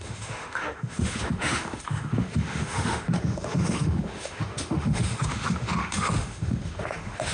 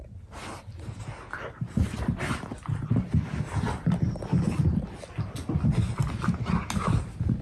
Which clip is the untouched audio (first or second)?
second